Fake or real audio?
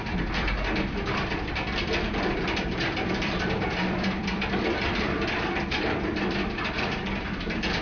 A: fake